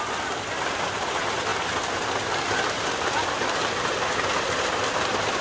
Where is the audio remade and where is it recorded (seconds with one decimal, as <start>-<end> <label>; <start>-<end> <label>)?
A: 0.0-5.4 recorded

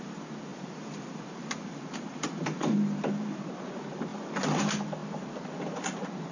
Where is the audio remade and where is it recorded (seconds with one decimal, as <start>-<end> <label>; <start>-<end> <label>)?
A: 0.0-0.5 recorded; 0.5-3.4 remade; 3.4-4.1 recorded; 4.1-4.6 remade; 4.6-6.3 recorded

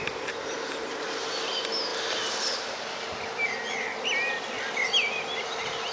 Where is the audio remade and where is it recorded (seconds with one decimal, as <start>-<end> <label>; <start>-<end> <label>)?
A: 0.0-5.9 recorded

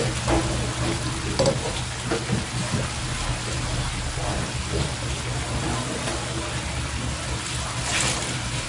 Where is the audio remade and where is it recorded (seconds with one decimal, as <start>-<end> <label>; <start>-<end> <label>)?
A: 0.0-8.7 recorded

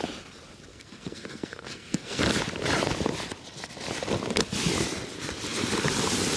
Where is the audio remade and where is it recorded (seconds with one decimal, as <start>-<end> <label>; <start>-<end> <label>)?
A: 0.0-0.7 recorded; 0.7-2.2 remade; 2.2-6.4 recorded

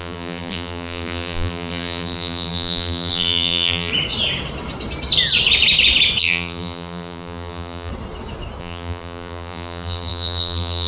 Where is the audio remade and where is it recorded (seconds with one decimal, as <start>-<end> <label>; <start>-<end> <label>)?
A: 0.0-3.9 remade; 3.9-6.2 recorded; 6.2-7.9 remade; 7.9-8.6 recorded; 8.6-10.9 remade